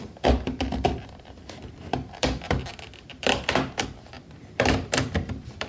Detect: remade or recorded remade